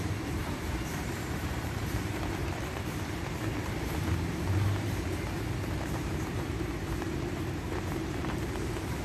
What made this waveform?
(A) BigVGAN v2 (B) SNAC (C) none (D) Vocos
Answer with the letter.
A